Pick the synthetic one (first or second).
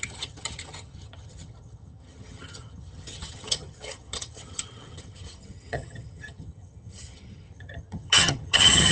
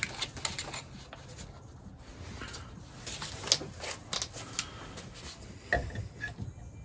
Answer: first